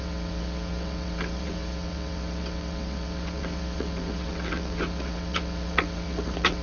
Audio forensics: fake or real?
fake